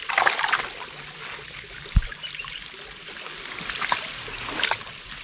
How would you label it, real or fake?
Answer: real